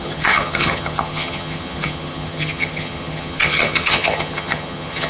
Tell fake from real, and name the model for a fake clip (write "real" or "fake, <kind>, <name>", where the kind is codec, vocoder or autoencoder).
fake, vocoder, HiFi-GAN